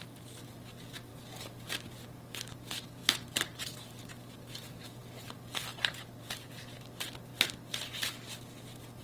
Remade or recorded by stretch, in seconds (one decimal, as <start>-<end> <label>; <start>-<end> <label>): 0.0-1.1 recorded; 1.1-1.7 remade; 1.7-3.0 recorded; 3.0-5.0 remade; 5.0-5.7 recorded; 5.7-6.5 remade; 6.5-9.0 recorded